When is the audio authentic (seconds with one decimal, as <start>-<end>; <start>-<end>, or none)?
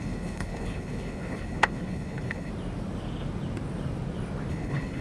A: 2.5-4.5